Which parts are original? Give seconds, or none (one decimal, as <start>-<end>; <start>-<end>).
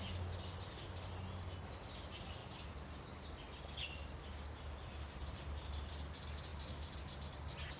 0.0-7.8